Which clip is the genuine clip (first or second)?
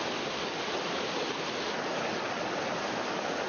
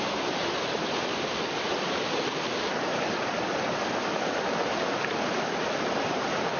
first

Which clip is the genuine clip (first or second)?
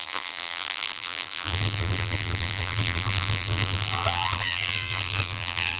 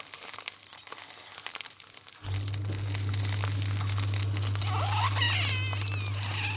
second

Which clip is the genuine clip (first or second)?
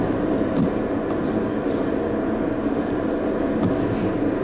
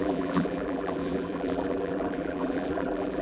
first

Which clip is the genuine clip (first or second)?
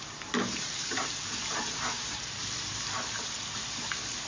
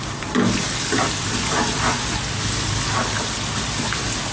second